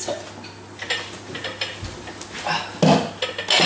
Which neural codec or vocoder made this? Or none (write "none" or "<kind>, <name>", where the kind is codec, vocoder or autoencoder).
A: none